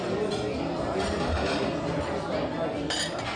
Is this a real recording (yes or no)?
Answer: yes